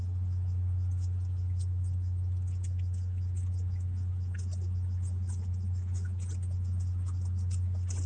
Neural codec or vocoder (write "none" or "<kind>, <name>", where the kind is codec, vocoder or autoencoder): none